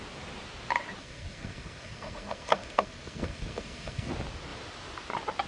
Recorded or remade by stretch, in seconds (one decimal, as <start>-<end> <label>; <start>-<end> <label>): 0.0-1.0 recorded; 1.0-4.1 remade; 4.1-5.5 recorded